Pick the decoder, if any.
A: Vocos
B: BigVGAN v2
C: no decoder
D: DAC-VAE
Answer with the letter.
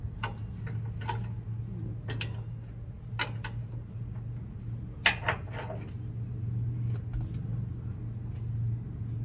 C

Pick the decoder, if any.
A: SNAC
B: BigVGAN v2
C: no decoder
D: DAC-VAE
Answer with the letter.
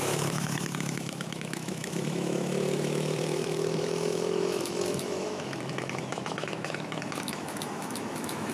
D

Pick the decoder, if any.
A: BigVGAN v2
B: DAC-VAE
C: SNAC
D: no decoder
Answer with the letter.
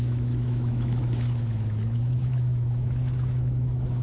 B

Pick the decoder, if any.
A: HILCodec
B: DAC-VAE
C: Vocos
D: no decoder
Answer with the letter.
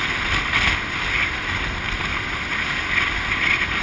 D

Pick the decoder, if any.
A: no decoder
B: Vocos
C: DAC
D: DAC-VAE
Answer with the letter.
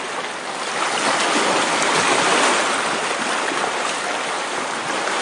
A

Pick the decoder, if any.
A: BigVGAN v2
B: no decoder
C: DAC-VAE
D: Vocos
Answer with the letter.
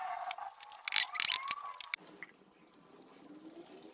B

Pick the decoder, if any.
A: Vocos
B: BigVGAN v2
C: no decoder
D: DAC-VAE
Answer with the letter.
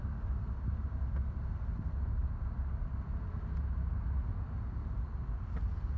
C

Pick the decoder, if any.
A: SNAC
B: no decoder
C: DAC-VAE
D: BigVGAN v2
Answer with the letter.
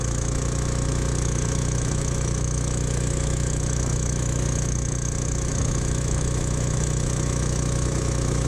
C